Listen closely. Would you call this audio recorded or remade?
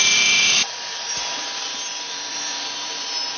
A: remade